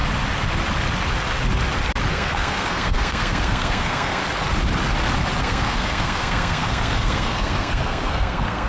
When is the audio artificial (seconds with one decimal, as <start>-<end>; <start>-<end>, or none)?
2.1-4.2; 5.4-8.7